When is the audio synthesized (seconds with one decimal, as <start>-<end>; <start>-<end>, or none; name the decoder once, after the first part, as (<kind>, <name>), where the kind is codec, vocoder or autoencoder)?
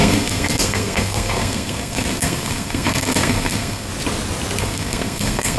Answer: 0.0-3.9 (codec, SNAC); 4.6-5.6